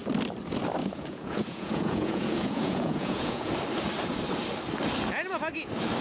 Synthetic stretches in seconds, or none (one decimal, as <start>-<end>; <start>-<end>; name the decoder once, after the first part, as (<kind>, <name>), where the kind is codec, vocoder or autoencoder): 0.8-3.5 (vocoder, Vocos)